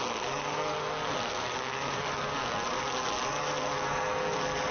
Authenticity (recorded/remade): recorded